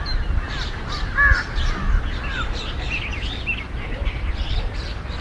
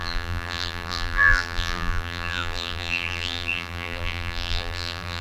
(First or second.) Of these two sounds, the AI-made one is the second